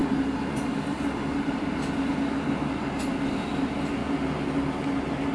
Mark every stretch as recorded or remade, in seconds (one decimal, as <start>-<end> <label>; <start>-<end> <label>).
0.0-2.6 remade; 2.6-4.0 recorded; 4.0-4.5 remade; 4.5-5.3 recorded